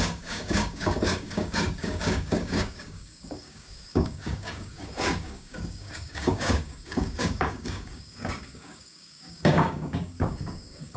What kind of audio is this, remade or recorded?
remade